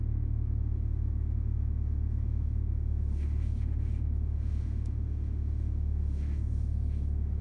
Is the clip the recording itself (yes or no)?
no